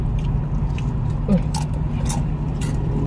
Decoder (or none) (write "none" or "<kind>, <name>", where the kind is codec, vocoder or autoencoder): none